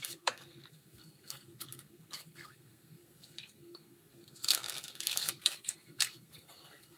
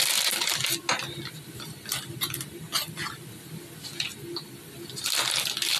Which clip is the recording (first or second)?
second